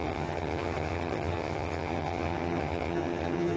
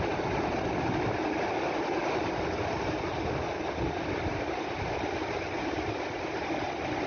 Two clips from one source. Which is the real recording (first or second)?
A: second